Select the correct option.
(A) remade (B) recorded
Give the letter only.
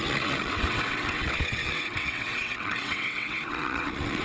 A